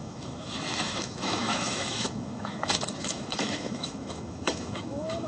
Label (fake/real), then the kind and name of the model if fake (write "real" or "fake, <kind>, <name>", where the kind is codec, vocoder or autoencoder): fake, autoencoder, DAC-VAE